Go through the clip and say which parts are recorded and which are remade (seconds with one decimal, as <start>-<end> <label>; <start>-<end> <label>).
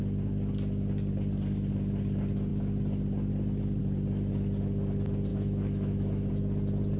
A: 0.0-5.3 recorded; 5.3-6.3 remade; 6.3-7.0 recorded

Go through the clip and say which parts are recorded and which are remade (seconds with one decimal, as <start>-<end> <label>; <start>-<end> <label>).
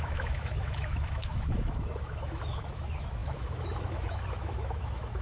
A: 0.0-5.2 remade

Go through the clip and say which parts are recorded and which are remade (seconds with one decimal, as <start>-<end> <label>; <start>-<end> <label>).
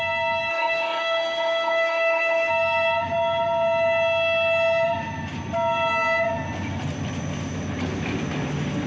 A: 0.0-0.5 recorded; 0.5-2.5 remade; 2.5-8.9 recorded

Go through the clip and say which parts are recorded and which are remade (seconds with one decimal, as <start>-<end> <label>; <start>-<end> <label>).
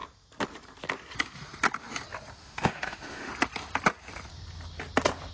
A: 0.0-2.4 recorded; 2.4-3.3 remade; 3.3-5.3 recorded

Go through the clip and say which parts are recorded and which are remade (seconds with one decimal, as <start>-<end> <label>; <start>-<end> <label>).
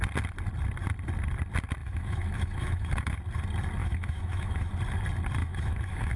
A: 0.0-1.8 recorded; 1.8-3.2 remade; 3.2-3.8 recorded; 3.8-4.7 remade; 4.7-5.4 recorded; 5.4-6.2 remade